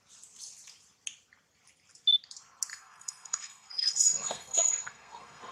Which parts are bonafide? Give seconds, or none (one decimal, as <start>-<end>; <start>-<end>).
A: 0.0-2.7